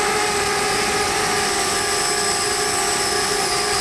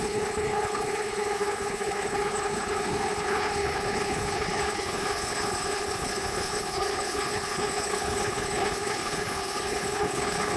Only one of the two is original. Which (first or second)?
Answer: first